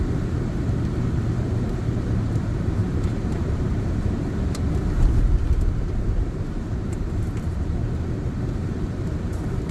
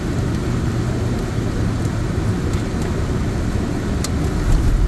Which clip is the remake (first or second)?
first